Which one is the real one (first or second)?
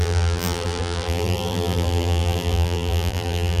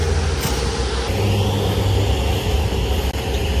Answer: second